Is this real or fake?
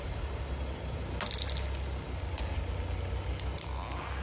real